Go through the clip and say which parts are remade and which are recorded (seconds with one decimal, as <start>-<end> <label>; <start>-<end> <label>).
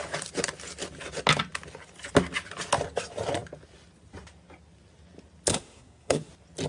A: 0.0-5.5 recorded; 5.5-6.3 remade; 6.3-6.7 recorded